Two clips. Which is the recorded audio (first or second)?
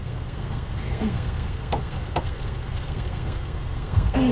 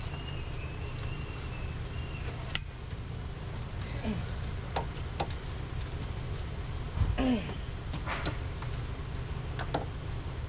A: second